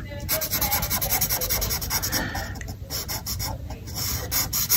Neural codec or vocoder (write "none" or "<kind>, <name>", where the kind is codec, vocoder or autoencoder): none